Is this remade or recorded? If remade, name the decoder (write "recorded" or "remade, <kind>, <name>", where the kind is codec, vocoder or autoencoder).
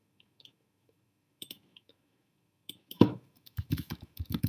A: remade, autoencoder, DAC-VAE